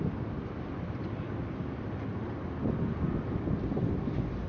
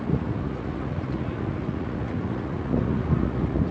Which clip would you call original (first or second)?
first